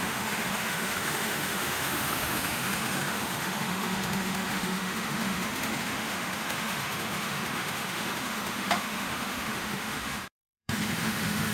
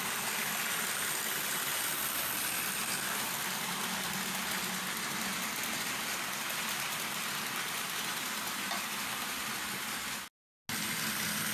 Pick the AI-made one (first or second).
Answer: first